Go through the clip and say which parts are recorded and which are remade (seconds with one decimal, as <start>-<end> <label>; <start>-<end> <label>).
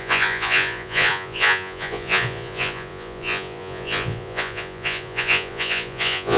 0.0-6.4 remade